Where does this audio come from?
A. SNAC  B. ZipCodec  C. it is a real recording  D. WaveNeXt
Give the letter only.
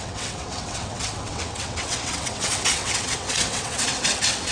D